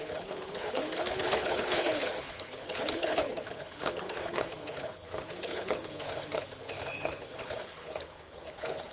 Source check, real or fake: fake